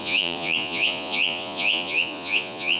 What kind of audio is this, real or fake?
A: fake